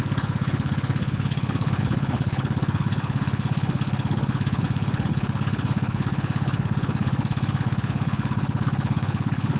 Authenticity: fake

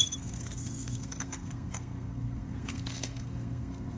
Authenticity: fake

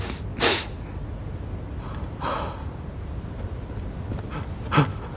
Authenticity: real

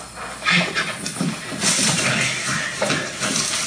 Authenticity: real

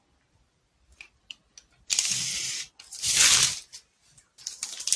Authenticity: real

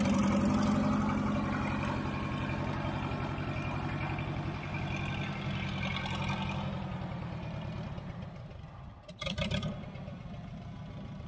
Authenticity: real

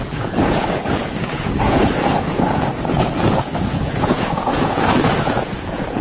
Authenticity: fake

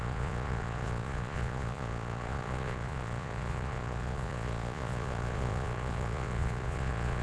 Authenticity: fake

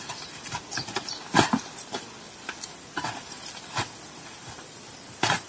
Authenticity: fake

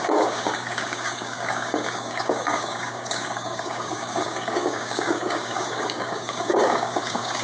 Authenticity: fake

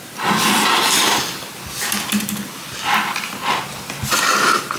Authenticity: real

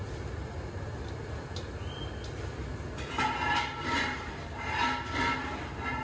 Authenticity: real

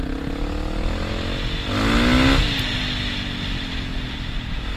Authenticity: real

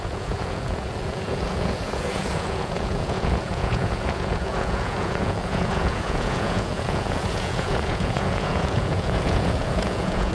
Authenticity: fake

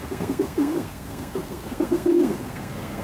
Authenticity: fake